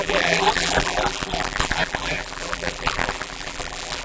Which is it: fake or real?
fake